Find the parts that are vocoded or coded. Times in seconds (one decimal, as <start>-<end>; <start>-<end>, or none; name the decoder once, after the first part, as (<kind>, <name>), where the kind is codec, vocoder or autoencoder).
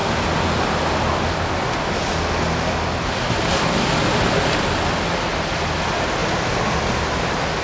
none